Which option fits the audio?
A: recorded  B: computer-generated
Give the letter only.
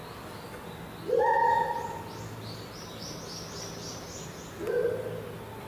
A